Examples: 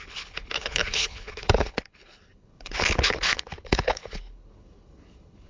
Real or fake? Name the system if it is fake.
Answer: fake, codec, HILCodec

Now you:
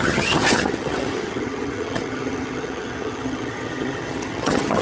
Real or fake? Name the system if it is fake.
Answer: fake, vocoder, HiFi-GAN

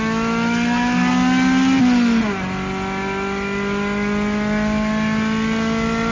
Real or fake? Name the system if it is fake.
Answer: real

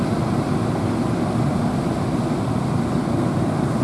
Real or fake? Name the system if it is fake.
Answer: real